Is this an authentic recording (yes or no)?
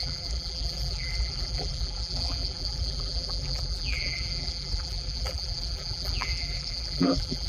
no